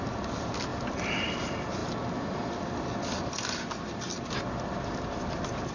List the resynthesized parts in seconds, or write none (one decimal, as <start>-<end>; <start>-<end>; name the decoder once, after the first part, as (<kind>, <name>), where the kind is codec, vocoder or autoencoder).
none